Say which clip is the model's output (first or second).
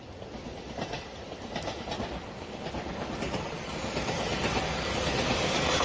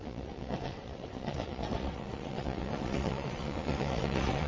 second